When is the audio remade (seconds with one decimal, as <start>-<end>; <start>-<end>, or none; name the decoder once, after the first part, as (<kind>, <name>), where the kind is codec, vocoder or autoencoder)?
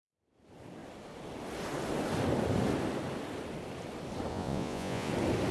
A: 4.3-5.1 (vocoder, Vocos)